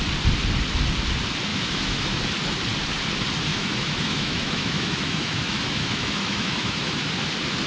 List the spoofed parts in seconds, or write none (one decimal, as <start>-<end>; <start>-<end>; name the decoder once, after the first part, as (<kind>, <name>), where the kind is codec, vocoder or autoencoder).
1.5-2.2 (autoencoder, DAC-VAE); 3.5-7.1